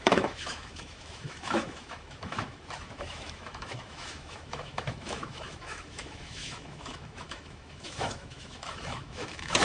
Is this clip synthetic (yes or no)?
yes